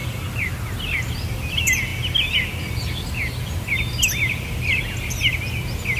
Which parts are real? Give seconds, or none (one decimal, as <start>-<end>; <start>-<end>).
0.5-6.0